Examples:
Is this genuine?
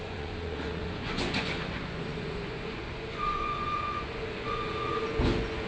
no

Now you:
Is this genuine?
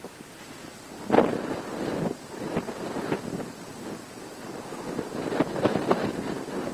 yes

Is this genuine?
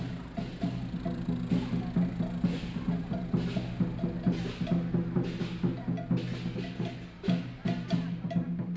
yes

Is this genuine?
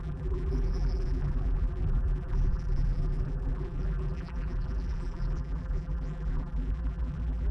no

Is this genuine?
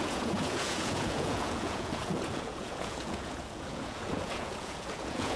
no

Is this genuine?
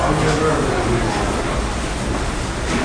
yes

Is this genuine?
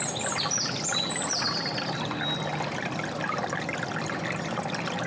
yes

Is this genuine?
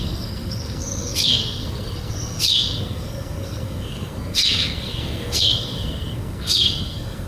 no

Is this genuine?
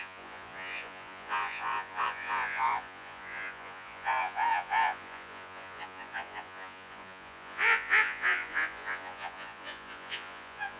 no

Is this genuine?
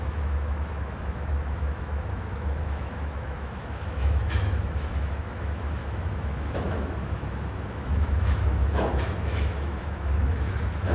no